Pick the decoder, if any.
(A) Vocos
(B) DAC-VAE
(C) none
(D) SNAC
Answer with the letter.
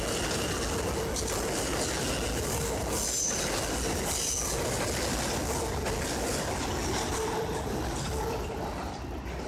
C